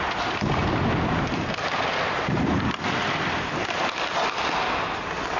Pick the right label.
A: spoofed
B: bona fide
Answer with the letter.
B